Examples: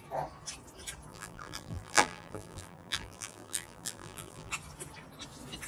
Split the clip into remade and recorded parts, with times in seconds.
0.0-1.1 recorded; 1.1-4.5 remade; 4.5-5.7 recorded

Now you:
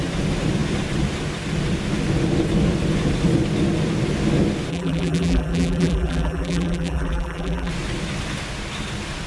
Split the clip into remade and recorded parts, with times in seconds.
0.0-4.7 recorded; 4.7-7.7 remade; 7.7-9.3 recorded

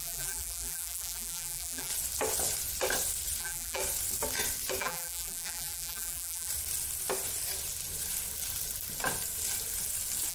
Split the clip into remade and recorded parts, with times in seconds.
0.0-1.9 remade; 1.9-3.4 recorded; 3.4-3.8 remade; 3.8-4.8 recorded; 4.8-6.5 remade; 6.5-10.3 recorded

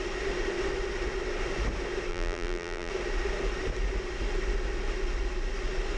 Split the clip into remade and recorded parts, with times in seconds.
0.0-2.1 recorded; 2.1-2.9 remade; 2.9-6.0 recorded

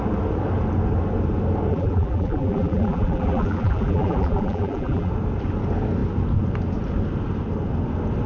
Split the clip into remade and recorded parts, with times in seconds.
0.0-1.7 recorded; 1.7-5.1 remade; 5.1-8.3 recorded